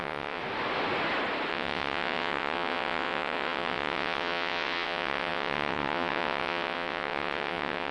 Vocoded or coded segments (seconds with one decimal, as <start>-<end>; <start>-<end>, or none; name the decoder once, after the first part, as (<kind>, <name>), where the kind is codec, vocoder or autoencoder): 0.0-0.4 (vocoder, WaveNeXt); 1.5-7.9